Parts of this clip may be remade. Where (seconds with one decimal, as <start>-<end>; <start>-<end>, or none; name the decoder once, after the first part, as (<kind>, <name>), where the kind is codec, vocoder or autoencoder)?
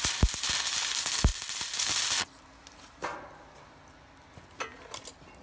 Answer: none